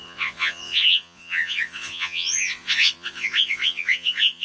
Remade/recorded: remade